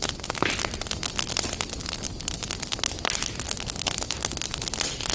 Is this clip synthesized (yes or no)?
no